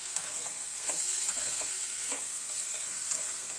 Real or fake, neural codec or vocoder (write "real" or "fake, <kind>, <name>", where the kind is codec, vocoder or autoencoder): fake, codec, SNAC